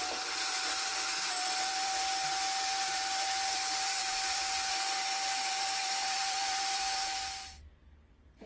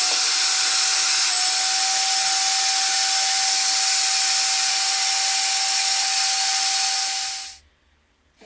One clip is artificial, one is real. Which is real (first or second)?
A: second